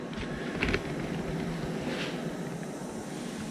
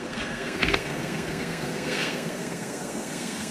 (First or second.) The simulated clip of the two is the second